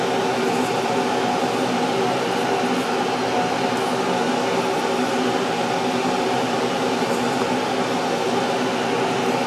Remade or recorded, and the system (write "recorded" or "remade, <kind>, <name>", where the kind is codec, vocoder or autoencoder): recorded